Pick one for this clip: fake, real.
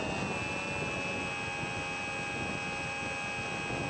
real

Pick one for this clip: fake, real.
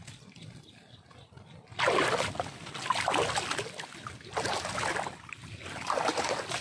real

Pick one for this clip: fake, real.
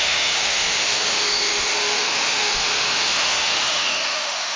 fake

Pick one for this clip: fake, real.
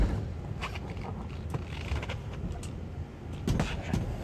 real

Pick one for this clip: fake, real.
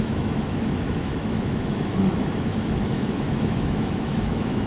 fake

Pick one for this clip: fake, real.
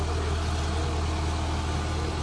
real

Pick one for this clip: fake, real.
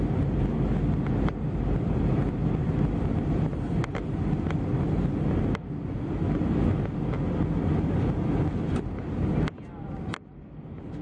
real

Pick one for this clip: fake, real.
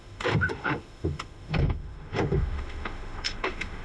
fake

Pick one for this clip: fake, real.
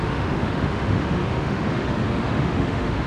fake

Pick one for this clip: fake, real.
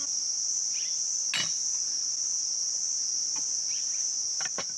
real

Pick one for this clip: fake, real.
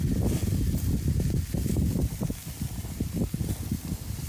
real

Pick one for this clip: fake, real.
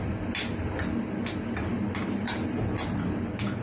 real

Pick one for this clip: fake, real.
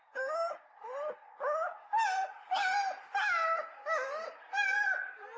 real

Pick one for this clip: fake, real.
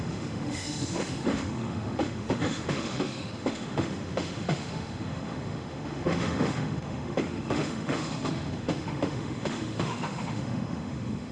fake